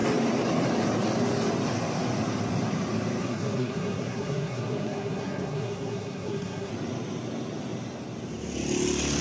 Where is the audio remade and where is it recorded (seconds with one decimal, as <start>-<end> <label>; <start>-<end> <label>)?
0.0-3.2 recorded; 3.2-6.7 remade; 6.7-9.2 recorded